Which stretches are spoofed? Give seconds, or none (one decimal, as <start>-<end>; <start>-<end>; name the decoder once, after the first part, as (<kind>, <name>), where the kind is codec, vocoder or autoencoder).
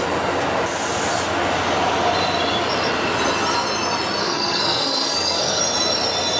4.2-5.6 (codec, SNAC)